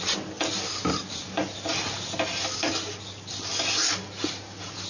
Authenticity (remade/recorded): recorded